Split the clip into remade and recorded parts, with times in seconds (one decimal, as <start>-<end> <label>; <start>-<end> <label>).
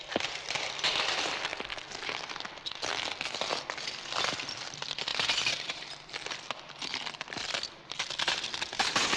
0.0-1.5 remade; 1.5-4.3 recorded; 4.3-9.2 remade